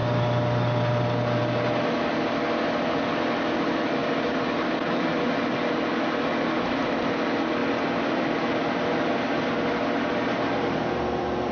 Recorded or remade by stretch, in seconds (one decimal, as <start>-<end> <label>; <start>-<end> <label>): 0.0-11.5 recorded